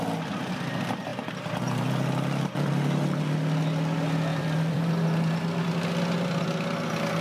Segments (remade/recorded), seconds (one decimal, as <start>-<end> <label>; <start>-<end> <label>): 0.0-4.3 recorded; 4.3-5.4 remade; 5.4-7.2 recorded